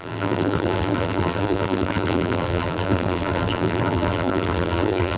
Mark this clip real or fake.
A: fake